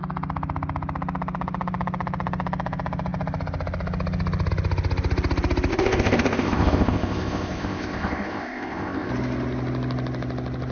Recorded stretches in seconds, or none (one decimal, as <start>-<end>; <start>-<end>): 0.0-5.7; 9.1-10.7